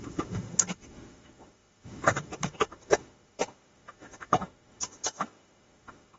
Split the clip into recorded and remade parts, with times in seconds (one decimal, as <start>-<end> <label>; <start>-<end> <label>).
0.0-6.2 remade

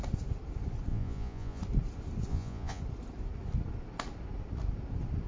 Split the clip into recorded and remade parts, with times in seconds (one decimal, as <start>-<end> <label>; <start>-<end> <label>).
0.0-0.9 recorded; 0.9-1.6 remade; 1.6-2.3 recorded; 2.3-2.8 remade; 2.8-5.3 recorded

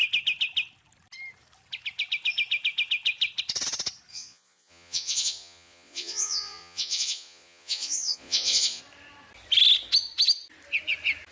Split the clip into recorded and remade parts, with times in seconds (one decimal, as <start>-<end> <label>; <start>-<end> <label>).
0.0-4.1 recorded; 4.1-8.8 remade; 8.8-11.3 recorded

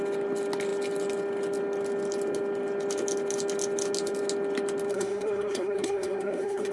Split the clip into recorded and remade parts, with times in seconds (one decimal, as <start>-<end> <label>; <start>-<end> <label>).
0.0-4.9 recorded; 4.9-6.7 remade